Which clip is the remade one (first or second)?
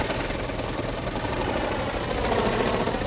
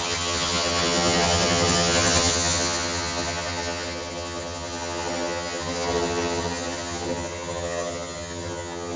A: second